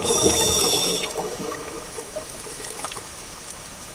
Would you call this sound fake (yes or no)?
yes